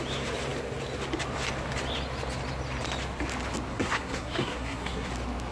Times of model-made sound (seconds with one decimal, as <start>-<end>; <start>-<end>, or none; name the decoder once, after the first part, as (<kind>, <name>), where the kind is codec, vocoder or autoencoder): 3.7-5.1 (codec, SNAC)